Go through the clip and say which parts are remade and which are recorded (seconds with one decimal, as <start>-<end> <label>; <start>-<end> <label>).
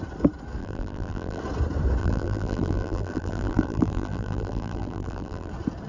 0.0-0.6 recorded; 0.6-1.4 remade; 1.4-2.0 recorded; 2.0-5.5 remade; 5.5-5.9 recorded